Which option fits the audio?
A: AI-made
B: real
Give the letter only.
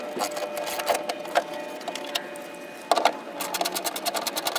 B